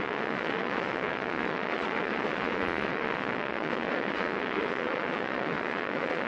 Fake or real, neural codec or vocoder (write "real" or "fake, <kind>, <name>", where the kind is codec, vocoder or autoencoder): fake, vocoder, Vocos